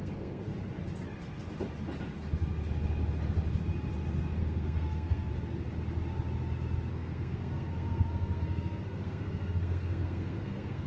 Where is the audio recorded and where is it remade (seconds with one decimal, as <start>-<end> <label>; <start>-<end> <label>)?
0.0-0.5 remade; 0.5-4.4 recorded; 4.4-5.3 remade; 5.3-6.9 recorded; 6.9-10.9 remade

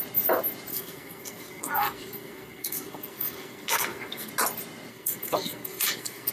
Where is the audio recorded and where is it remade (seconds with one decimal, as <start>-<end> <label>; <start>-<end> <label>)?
0.0-0.7 recorded; 0.7-4.3 remade; 4.3-4.9 recorded; 4.9-6.3 remade